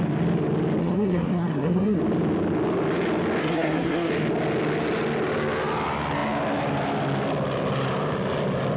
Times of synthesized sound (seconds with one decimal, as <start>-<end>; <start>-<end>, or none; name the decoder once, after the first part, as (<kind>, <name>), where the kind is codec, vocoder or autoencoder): 0.8-2.0 (codec, SNAC); 3.4-4.1